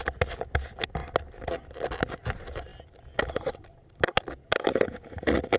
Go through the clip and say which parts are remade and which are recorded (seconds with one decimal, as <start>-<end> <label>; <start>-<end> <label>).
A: 0.0-5.6 recorded